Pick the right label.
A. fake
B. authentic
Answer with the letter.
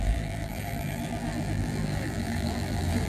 A